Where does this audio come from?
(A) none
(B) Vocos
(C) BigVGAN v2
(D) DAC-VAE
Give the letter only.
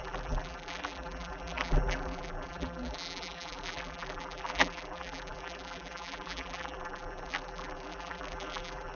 C